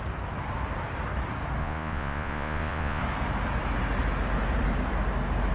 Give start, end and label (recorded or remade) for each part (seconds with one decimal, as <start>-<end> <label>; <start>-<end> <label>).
0.0-1.6 recorded; 1.6-3.0 remade; 3.0-5.5 recorded